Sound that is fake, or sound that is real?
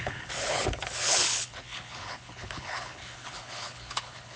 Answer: fake